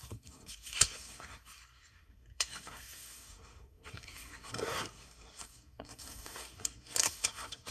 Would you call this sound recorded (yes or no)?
no